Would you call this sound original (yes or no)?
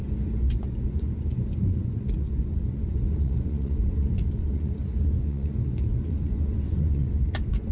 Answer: no